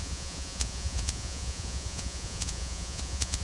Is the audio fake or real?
fake